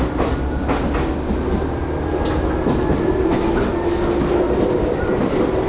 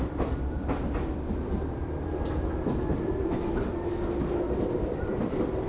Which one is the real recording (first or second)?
first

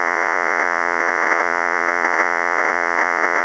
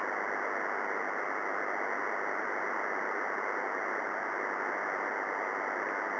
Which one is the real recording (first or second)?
second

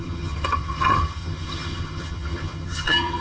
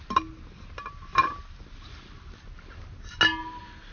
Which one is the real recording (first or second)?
second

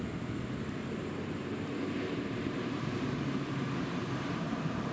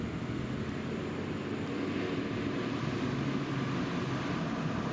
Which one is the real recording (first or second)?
second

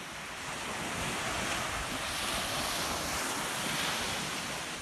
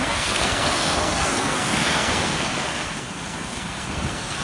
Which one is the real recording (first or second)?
first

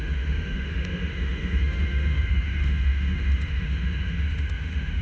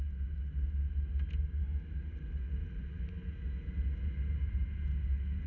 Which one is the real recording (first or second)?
second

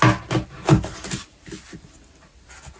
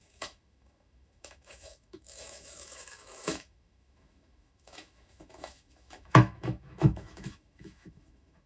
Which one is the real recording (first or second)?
first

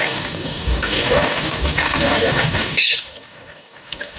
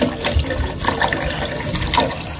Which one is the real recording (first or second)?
second